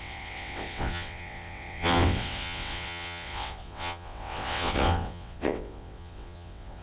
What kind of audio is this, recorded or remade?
remade